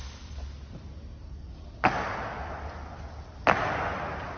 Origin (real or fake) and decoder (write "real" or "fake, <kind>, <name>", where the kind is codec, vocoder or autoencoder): real